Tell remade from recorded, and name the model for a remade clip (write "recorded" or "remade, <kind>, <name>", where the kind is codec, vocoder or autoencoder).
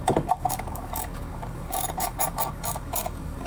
remade, codec, DAC